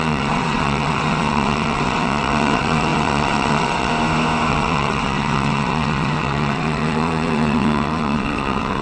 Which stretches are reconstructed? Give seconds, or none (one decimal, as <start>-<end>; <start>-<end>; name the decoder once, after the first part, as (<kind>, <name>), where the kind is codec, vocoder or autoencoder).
0.0-3.9 (vocoder, WaveNeXt); 4.5-8.8